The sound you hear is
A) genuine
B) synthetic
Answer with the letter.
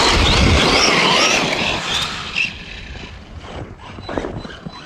A